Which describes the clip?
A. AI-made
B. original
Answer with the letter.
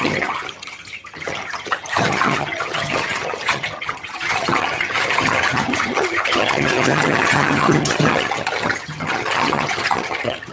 A